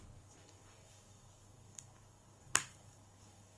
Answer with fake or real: fake